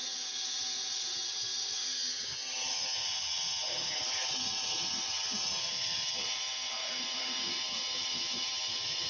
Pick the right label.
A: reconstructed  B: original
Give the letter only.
A